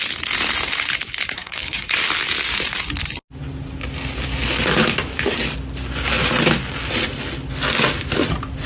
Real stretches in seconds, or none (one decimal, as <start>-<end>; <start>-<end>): 0.0-1.4; 1.9-8.7